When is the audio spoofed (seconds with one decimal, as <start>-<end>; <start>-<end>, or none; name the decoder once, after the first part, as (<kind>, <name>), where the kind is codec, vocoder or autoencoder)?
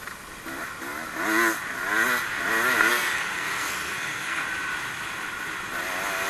2.9-4.4 (codec, SNAC)